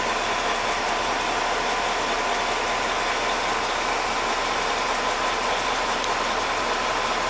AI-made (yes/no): no